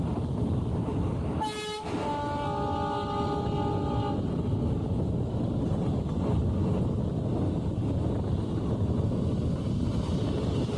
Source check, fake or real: real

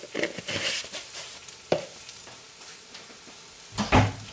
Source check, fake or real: real